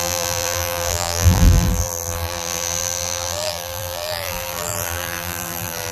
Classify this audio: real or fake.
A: fake